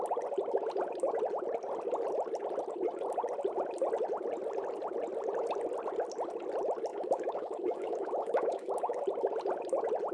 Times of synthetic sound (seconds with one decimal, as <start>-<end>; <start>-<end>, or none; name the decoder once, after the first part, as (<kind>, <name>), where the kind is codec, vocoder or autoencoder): 6.9-9.0 (autoencoder, DAC-VAE)